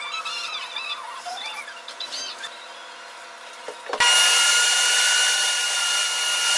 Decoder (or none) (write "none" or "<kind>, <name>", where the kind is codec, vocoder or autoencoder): none